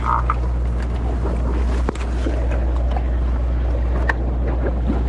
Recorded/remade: recorded